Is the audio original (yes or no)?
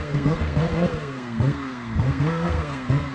no